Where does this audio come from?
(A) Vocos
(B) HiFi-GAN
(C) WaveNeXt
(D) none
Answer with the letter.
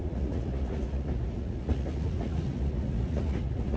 A